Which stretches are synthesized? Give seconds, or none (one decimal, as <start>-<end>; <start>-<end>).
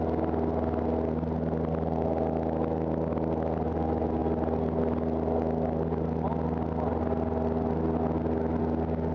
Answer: none